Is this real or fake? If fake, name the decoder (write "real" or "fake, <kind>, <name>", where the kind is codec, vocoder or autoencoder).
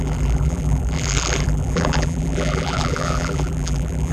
fake, vocoder, BigVGAN v2